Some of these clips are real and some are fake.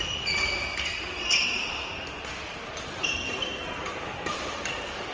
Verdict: real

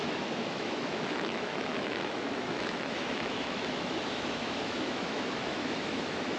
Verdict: fake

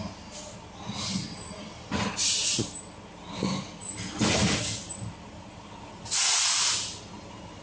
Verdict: real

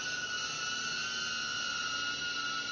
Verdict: real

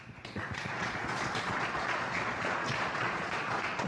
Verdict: fake